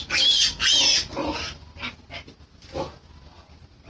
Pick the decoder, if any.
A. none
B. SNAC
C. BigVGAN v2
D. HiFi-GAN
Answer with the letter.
A